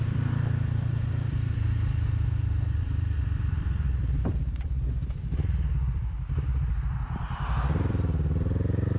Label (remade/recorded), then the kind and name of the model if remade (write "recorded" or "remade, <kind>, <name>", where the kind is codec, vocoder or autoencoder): remade, vocoder, BigVGAN v2